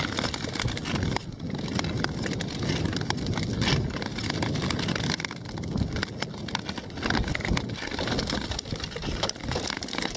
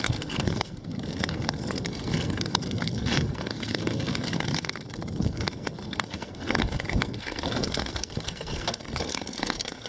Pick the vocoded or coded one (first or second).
second